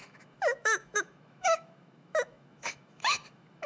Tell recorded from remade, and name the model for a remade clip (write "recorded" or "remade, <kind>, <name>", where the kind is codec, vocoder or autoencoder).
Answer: remade, autoencoder, DAC-VAE